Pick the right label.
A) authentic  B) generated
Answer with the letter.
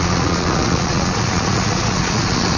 B